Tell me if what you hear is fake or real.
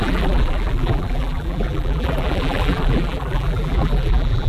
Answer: fake